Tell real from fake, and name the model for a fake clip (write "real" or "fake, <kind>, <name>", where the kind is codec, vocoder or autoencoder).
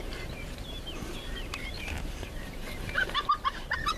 fake, vocoder, BigVGAN v2